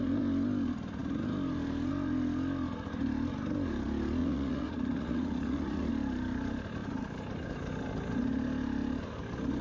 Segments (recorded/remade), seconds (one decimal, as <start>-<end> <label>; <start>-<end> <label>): 0.0-4.2 recorded; 4.2-5.9 remade; 5.9-9.6 recorded

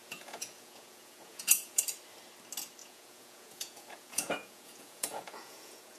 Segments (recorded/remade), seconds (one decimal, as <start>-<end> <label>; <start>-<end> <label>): 0.0-1.8 remade; 1.8-2.8 recorded; 2.8-6.0 remade

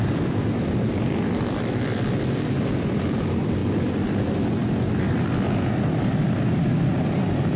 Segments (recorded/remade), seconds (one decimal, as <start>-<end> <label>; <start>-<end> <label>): 0.0-1.9 remade; 1.9-2.6 recorded; 2.6-3.6 remade; 3.6-6.5 recorded; 6.5-7.6 remade

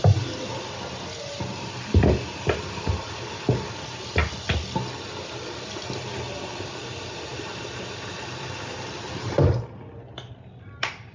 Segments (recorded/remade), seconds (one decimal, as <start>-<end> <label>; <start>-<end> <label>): 0.0-7.3 recorded; 7.3-9.7 remade; 9.7-11.1 recorded

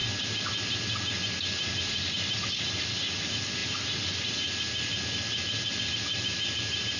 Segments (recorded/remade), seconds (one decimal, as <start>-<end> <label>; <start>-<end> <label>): 0.0-7.0 recorded

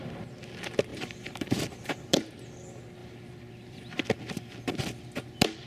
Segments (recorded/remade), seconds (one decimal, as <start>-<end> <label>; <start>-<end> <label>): 0.0-0.9 recorded; 0.9-2.3 remade; 2.3-3.0 recorded; 3.0-4.0 remade; 4.0-5.7 recorded

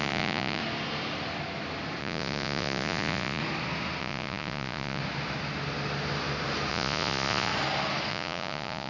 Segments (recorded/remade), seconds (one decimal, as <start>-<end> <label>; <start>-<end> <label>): 0.0-0.6 remade; 0.6-2.0 recorded; 2.0-3.4 remade; 3.4-4.0 recorded; 4.0-5.0 remade; 5.0-6.7 recorded; 6.7-7.5 remade; 7.5-8.1 recorded; 8.1-8.9 remade

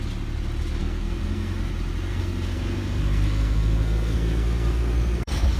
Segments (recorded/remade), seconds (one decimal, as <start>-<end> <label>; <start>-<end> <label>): 0.0-0.8 recorded; 0.8-1.7 remade; 1.7-2.1 recorded; 2.1-5.6 remade